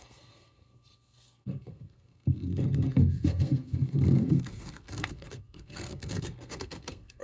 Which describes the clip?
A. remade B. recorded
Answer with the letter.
A